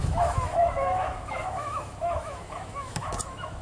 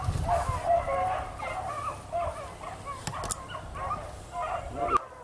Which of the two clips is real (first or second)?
second